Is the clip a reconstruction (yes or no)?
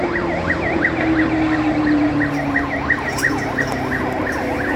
no